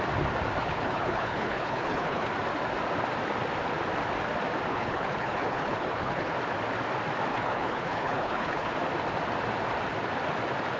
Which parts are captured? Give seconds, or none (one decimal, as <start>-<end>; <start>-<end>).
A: 0.0-0.6; 2.3-4.7; 6.3-7.3; 8.7-10.8